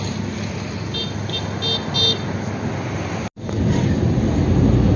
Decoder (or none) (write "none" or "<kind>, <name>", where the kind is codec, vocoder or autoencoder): none